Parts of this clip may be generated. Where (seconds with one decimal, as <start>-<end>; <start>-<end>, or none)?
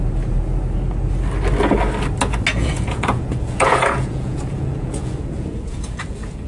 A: 2.5-6.5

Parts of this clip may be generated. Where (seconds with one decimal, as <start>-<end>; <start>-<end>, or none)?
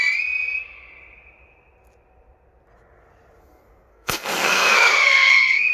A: 3.4-5.7